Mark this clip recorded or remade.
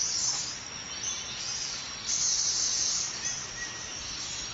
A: recorded